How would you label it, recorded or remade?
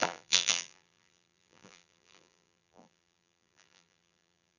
remade